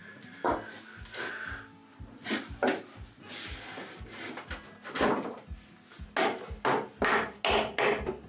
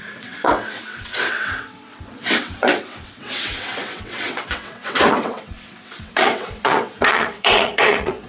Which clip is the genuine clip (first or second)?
first